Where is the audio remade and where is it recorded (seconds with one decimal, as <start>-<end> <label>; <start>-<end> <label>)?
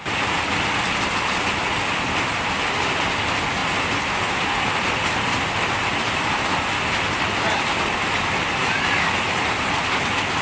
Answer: 0.0-10.4 recorded